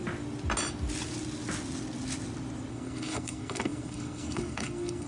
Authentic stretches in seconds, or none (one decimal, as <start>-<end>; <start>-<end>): 0.0-2.7